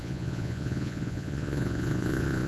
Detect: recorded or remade remade